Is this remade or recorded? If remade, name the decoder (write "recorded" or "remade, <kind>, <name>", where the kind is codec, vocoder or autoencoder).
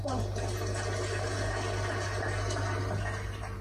recorded